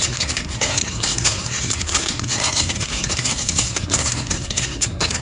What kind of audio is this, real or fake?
fake